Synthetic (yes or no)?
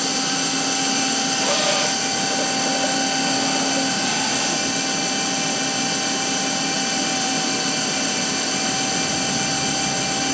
no